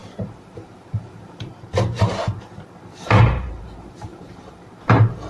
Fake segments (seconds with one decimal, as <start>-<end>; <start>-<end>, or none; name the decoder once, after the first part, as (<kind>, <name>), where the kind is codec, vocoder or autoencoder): 0.0-5.3 (vocoder, BigVGAN v2)